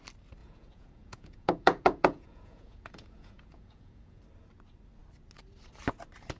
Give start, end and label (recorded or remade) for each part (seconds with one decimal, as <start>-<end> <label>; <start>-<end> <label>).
0.0-0.4 recorded; 0.4-4.2 remade; 4.2-6.4 recorded